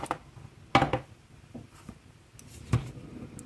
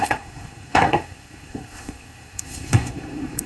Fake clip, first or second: second